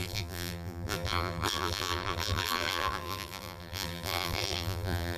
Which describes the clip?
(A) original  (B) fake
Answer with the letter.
B